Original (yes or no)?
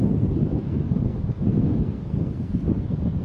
no